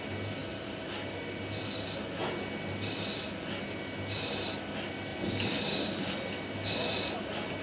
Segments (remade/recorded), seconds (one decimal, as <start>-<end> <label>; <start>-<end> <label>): 0.0-0.4 recorded; 0.4-1.2 remade; 1.2-5.1 recorded; 5.1-6.0 remade; 6.0-7.6 recorded